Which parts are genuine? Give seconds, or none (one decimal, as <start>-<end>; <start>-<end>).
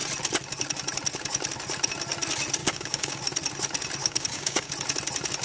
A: 0.0-2.6; 3.2-4.0; 4.7-5.4